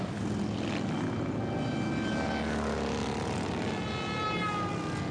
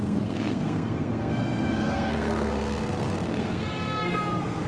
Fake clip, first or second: second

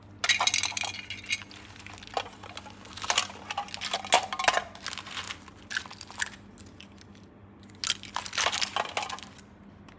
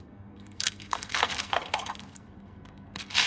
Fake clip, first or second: second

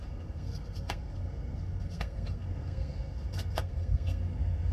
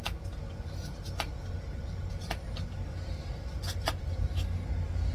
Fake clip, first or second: first